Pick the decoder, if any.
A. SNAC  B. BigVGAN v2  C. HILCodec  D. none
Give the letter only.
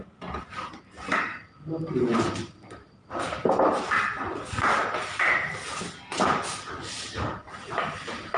B